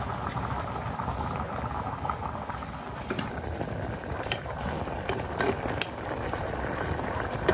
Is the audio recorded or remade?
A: recorded